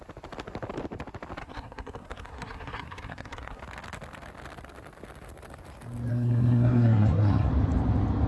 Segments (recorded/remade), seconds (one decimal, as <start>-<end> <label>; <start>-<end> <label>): 0.0-1.4 recorded; 1.4-3.6 remade; 3.6-6.1 recorded; 6.1-7.5 remade; 7.5-8.3 recorded

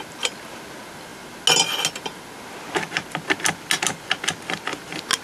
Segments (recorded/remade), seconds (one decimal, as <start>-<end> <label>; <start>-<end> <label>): 0.0-5.2 recorded

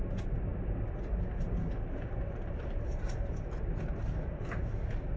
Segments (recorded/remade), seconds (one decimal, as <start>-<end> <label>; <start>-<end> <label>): 0.0-5.2 recorded

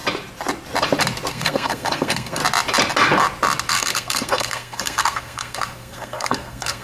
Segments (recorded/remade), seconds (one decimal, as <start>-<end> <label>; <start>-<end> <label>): 0.0-1.3 recorded; 1.3-2.4 remade; 2.4-3.7 recorded; 3.7-6.8 remade

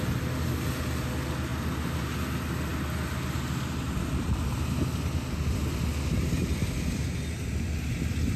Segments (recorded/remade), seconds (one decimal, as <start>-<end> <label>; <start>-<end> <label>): 0.0-8.4 recorded